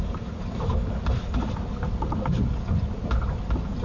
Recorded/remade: recorded